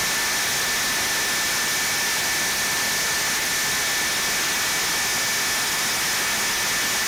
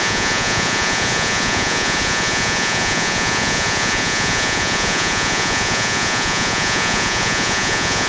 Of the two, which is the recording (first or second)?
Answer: first